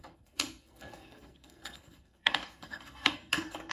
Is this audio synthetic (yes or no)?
yes